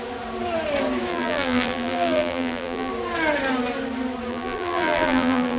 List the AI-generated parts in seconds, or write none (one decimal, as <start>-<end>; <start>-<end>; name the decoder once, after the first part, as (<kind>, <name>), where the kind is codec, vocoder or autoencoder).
1.1-2.9 (vocoder, BigVGAN v2); 4.3-5.6